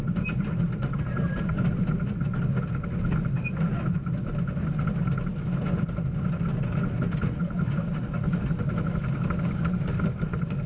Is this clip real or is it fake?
real